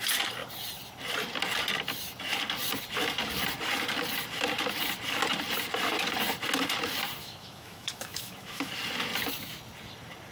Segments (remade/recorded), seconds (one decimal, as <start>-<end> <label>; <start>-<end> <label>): 0.0-7.2 recorded; 7.2-8.7 remade; 8.7-10.3 recorded